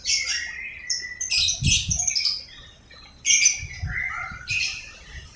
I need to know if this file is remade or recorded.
recorded